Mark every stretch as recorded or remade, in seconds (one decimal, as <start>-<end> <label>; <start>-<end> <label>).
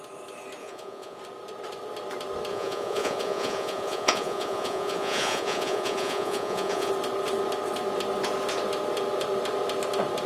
0.0-0.6 recorded; 0.6-1.2 remade; 1.2-2.5 recorded; 2.5-6.9 remade; 6.9-10.3 recorded